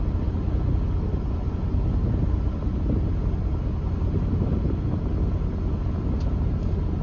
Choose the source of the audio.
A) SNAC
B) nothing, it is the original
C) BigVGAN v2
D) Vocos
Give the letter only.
B